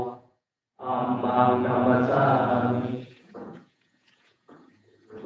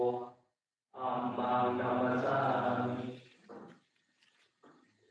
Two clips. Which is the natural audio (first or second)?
second